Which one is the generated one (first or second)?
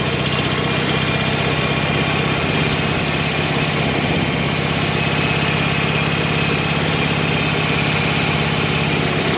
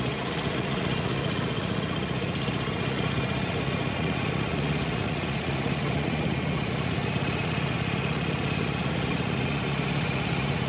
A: second